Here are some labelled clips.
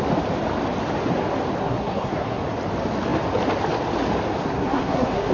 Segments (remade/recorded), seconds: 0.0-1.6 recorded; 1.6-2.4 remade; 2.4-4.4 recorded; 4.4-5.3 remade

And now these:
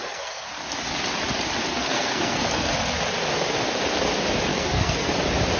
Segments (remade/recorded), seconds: 0.0-0.5 remade; 0.5-1.7 recorded; 1.7-2.7 remade; 2.7-4.5 recorded; 4.5-5.1 remade; 5.1-5.6 recorded

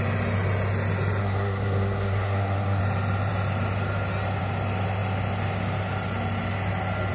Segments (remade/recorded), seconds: 0.0-1.2 recorded; 1.2-2.8 remade; 2.8-7.1 recorded

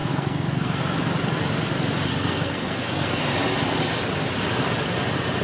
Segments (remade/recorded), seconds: 0.0-0.8 remade; 0.8-2.1 recorded; 2.1-3.2 remade; 3.2-5.4 recorded